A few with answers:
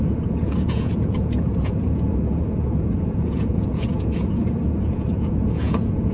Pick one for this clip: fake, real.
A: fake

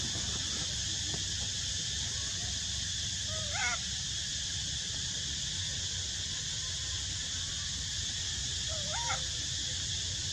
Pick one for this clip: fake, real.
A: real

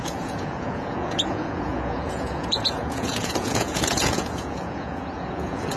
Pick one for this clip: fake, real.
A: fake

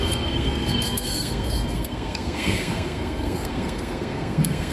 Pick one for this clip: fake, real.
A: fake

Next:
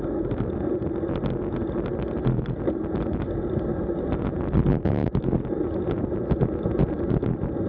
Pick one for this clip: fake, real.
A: real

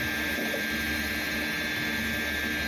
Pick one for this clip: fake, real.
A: real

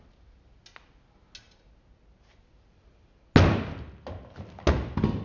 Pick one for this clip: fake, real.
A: real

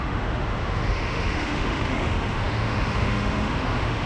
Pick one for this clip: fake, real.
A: fake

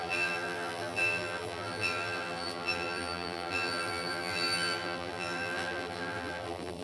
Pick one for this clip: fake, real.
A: fake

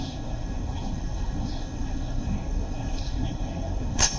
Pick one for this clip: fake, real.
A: fake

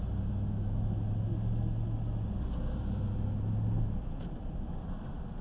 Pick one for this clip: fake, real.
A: real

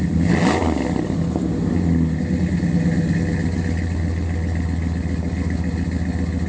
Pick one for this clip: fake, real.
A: real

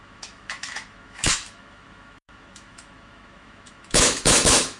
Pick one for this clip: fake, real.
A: fake